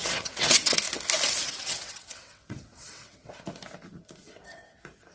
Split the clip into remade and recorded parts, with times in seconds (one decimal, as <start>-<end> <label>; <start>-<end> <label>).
0.0-0.8 remade; 0.8-1.4 recorded; 1.4-3.3 remade; 3.3-5.1 recorded